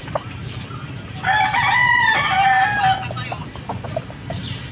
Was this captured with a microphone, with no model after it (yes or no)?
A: yes